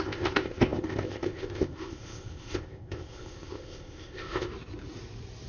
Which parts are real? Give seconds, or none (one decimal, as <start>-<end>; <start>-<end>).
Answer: 4.5-5.5